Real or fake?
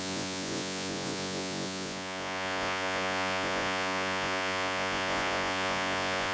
fake